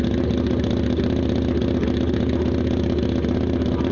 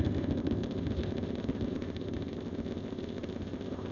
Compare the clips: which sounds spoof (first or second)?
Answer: second